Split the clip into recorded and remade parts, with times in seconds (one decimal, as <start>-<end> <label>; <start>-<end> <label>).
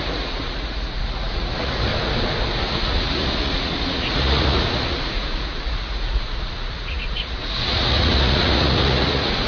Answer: 0.0-1.9 remade; 1.9-2.6 recorded; 2.6-9.5 remade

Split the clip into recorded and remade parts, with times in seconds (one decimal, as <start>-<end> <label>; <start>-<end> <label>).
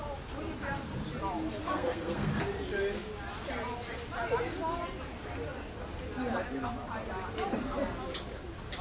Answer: 0.0-1.6 recorded; 1.6-2.3 remade; 2.3-8.8 recorded